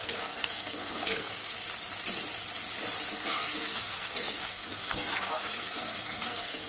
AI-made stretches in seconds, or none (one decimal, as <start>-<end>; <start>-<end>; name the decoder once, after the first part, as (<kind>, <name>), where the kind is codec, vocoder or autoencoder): 0.0-1.4 (codec, SNAC); 3.1-6.7